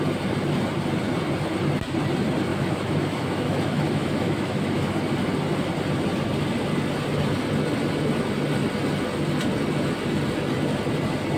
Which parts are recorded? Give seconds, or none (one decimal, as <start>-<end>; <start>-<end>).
0.0-2.5; 5.1-11.4